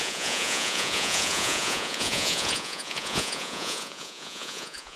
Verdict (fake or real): fake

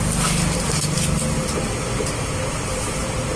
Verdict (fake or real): real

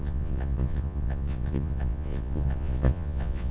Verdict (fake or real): fake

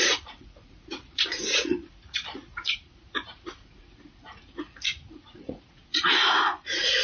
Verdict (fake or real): fake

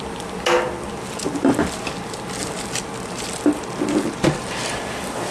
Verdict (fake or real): real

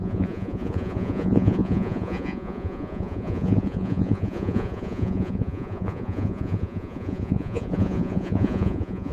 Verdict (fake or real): fake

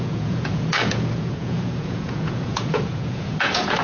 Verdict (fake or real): fake